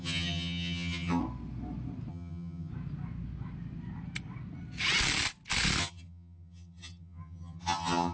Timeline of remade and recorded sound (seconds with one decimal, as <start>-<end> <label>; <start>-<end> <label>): 0.0-1.2 remade; 1.2-2.1 recorded; 2.1-2.7 remade; 2.7-5.8 recorded; 5.8-8.1 remade